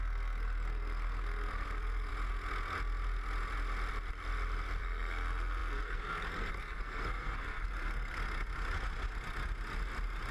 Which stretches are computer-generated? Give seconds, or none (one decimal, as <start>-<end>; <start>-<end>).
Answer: 0.0-2.1; 4.8-8.2